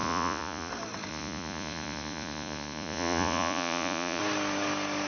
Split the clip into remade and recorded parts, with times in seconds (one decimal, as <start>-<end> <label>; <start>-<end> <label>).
0.0-0.7 remade; 0.7-1.1 recorded; 1.1-4.2 remade; 4.2-5.1 recorded